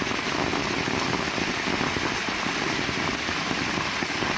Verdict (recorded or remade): recorded